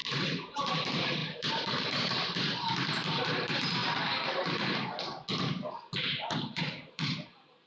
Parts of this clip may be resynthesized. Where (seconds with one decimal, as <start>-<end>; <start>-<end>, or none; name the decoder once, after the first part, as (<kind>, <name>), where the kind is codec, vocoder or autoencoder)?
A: 0.0-3.8 (vocoder, BigVGAN v2); 6.1-7.7

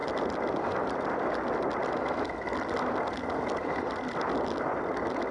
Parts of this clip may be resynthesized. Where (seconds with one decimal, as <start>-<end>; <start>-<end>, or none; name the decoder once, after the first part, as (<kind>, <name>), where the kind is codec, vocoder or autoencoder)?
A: 3.6-4.2 (vocoder, BigVGAN v2)